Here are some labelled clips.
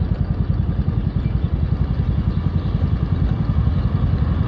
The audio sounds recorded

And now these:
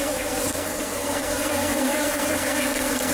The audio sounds remade